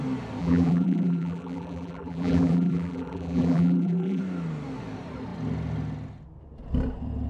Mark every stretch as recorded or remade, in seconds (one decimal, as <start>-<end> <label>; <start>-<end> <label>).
0.0-0.4 recorded; 0.4-4.2 remade; 4.2-7.3 recorded